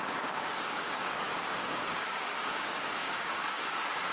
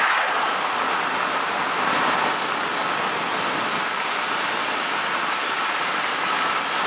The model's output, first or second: first